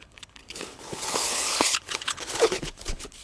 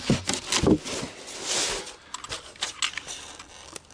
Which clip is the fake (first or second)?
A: first